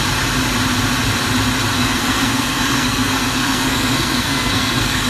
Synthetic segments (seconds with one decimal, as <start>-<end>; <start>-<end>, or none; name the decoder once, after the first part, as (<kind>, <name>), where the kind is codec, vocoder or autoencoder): 1.7-5.1 (codec, SNAC)